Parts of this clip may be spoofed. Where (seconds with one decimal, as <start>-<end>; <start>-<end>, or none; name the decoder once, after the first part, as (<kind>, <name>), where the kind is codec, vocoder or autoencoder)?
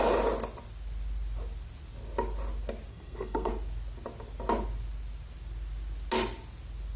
2.9-3.5 (codec, SNAC)